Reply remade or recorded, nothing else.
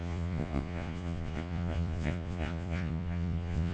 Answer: remade